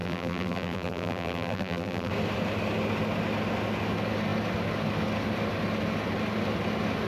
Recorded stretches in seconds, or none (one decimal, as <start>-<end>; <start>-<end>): 2.1-7.1